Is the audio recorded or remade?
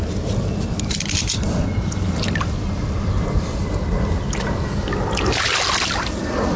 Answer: recorded